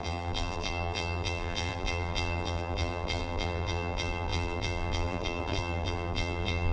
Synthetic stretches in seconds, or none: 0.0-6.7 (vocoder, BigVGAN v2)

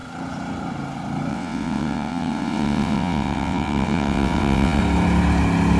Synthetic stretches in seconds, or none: 1.3-4.8 (vocoder, WaveNeXt)